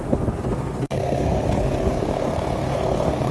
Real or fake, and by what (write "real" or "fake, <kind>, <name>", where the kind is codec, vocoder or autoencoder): fake, codec, SNAC